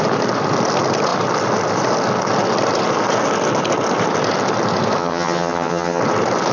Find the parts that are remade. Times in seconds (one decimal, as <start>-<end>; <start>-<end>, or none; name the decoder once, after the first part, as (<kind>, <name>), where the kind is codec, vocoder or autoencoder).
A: 5.0-6.0 (vocoder, HiFi-GAN)